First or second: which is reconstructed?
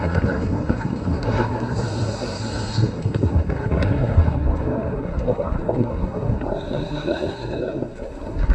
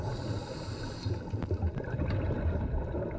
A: first